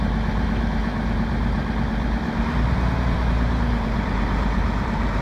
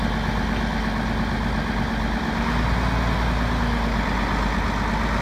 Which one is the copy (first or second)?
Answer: first